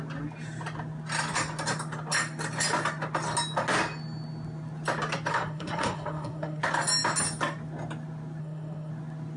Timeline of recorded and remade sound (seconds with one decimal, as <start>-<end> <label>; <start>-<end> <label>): 0.0-5.3 recorded; 5.3-6.6 remade; 6.6-8.4 recorded; 8.4-8.9 remade; 8.9-9.4 recorded